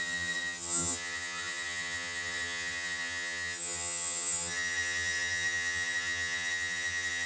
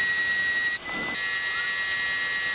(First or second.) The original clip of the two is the second